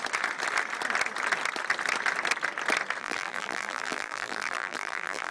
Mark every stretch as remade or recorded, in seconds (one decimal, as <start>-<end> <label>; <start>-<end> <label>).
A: 0.0-3.0 recorded; 3.0-5.3 remade